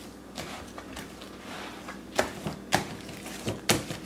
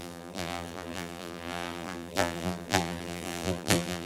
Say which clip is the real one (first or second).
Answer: first